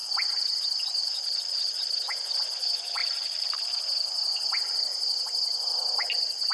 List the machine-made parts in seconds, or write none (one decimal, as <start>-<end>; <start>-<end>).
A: 1.0-1.7; 3.0-3.6